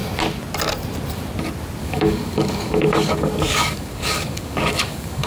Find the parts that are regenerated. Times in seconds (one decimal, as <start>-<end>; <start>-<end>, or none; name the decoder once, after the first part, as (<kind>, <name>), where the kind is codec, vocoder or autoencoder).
1.8-5.3 (codec, DAC)